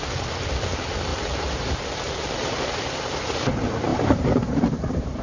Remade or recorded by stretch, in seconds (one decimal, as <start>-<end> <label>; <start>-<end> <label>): 0.0-1.1 recorded; 1.1-1.8 remade; 1.8-3.9 recorded; 3.9-5.2 remade

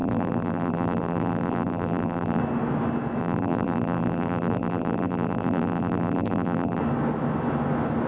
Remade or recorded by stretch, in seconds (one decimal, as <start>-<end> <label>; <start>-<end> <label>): 0.0-2.4 remade; 2.4-3.2 recorded; 3.2-6.8 remade; 6.8-8.1 recorded

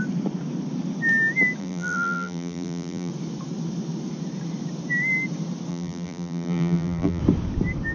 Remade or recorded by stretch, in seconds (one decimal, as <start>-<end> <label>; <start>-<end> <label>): 0.0-1.6 recorded; 1.6-3.1 remade; 3.1-5.7 recorded; 5.7-7.2 remade; 7.2-7.9 recorded

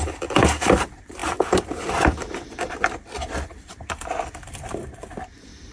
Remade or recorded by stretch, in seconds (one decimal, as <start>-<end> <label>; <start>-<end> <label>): 0.0-5.7 remade

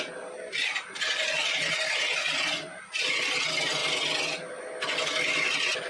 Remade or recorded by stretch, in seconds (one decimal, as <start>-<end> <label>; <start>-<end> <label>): 0.0-5.9 recorded